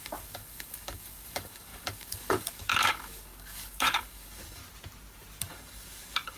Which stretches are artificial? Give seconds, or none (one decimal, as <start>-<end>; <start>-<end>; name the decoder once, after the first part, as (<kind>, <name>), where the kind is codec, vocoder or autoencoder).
0.0-4.6 (codec, DAC); 5.4-6.4